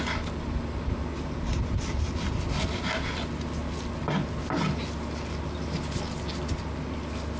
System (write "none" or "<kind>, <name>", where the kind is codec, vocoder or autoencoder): none